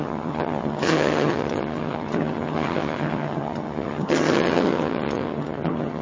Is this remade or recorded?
remade